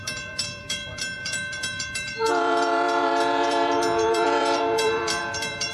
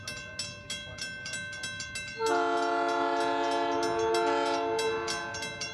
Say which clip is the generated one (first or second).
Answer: first